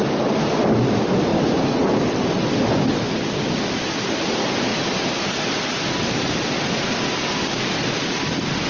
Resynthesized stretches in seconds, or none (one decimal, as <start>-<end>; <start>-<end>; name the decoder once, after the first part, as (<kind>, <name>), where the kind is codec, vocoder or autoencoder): none